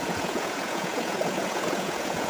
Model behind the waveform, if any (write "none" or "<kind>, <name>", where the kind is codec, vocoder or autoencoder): vocoder, Vocos